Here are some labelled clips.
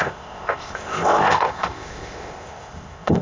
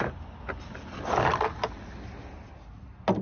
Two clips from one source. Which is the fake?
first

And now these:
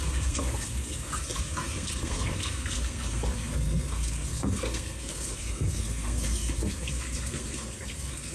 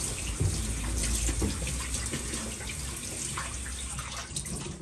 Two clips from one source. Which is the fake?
first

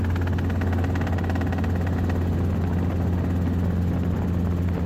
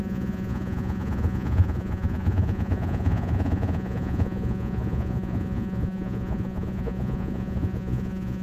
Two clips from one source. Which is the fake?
second